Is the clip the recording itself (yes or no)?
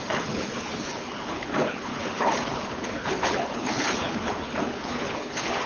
no